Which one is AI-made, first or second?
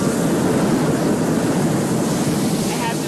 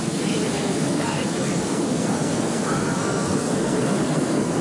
second